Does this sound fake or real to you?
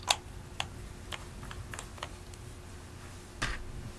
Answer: real